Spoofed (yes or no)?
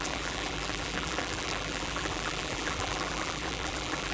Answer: yes